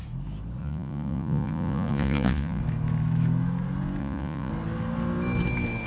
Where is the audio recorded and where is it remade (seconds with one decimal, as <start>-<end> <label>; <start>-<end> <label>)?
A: 0.0-0.6 recorded; 0.6-2.6 remade; 2.6-4.0 recorded; 4.0-4.5 remade; 4.5-5.9 recorded